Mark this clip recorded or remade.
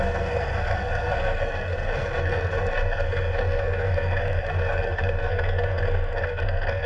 remade